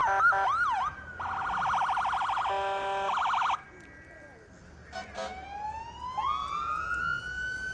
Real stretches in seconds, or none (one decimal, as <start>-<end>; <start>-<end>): 0.0-6.4; 7.0-7.7